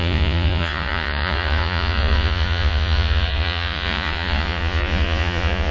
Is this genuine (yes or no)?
no